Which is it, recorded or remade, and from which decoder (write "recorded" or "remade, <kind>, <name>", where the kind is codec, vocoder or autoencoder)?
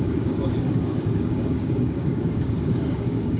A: remade, codec, DAC